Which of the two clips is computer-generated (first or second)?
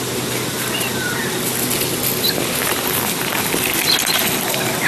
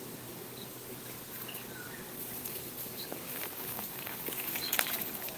second